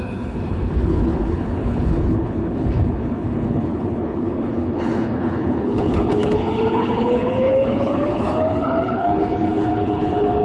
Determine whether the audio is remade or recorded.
remade